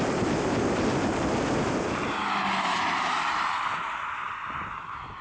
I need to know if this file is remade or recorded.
recorded